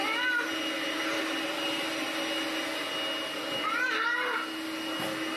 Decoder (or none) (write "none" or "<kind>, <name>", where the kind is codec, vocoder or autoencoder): none